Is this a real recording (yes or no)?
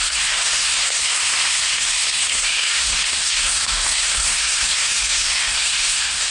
no